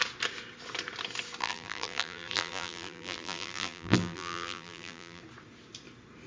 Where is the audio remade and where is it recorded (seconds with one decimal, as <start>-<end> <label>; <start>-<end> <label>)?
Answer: 0.0-1.4 recorded; 1.4-5.2 remade; 5.2-6.3 recorded